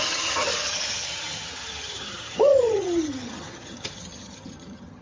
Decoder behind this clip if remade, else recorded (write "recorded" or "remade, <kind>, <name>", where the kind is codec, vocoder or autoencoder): remade, vocoder, HiFi-GAN